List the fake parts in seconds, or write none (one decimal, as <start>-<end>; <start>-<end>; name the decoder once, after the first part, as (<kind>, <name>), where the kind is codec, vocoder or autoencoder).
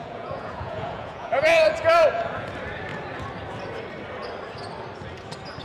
0.0-2.5 (vocoder, Vocos)